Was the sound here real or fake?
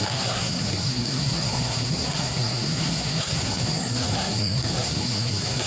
fake